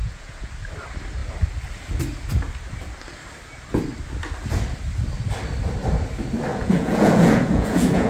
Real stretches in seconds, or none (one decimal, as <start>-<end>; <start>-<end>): 0.5-6.5